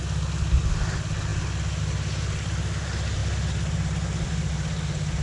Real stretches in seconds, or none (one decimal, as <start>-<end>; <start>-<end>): 0.0-5.2